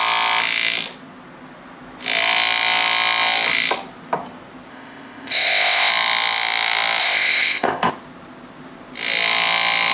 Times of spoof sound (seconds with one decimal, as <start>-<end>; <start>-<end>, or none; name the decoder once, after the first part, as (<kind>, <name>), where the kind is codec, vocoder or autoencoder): 4.7-5.9 (codec, ZipCodec); 7.0-7.9